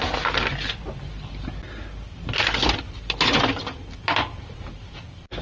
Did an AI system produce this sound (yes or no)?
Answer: no